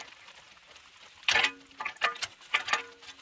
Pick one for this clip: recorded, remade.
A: recorded